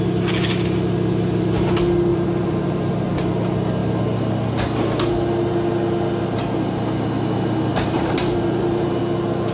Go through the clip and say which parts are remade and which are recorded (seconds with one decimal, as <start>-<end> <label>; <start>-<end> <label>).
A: 0.0-2.1 recorded; 2.1-2.9 remade; 2.9-7.7 recorded; 7.7-9.0 remade; 9.0-9.5 recorded

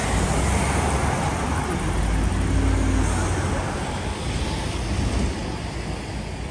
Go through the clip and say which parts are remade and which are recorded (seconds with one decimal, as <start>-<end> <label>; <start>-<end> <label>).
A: 0.0-6.5 recorded

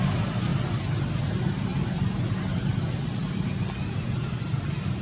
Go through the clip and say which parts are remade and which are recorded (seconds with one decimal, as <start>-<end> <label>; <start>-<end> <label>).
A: 0.0-5.0 recorded

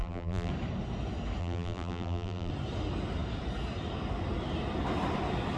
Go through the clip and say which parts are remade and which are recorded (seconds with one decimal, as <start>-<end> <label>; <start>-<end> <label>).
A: 0.0-0.5 remade; 0.5-1.4 recorded; 1.4-2.5 remade; 2.5-5.6 recorded

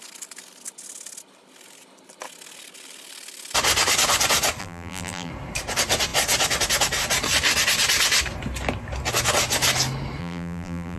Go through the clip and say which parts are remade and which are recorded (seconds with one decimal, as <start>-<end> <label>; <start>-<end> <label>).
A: 0.0-4.6 recorded; 4.6-5.3 remade; 5.3-10.2 recorded; 10.2-11.0 remade

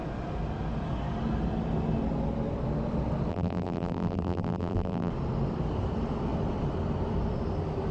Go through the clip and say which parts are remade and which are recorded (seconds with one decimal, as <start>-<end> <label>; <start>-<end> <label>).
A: 0.0-3.3 recorded; 3.3-5.1 remade; 5.1-7.9 recorded

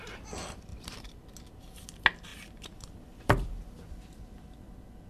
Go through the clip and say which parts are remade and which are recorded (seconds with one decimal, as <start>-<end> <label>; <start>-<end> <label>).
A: 0.0-0.7 recorded; 0.7-1.2 remade; 1.2-2.3 recorded; 2.3-3.6 remade; 3.6-5.1 recorded